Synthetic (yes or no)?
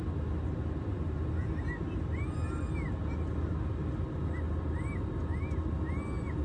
no